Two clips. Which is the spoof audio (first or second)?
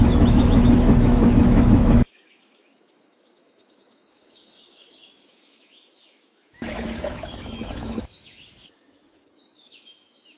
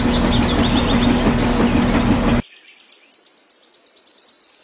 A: first